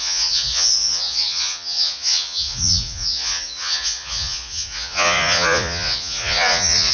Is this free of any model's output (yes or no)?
no